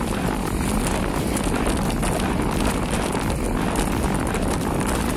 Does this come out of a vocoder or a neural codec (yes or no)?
no